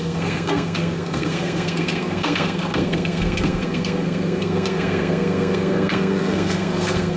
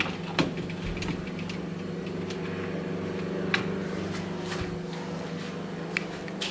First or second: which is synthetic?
first